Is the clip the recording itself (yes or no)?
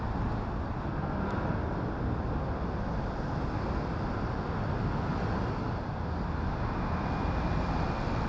yes